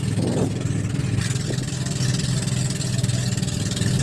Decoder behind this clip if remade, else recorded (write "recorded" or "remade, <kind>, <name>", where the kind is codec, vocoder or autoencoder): recorded